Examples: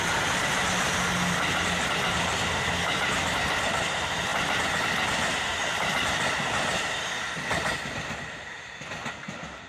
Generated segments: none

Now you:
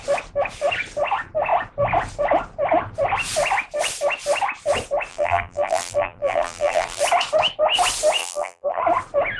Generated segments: 5.1-7.0 (vocoder, BigVGAN v2); 8.2-8.8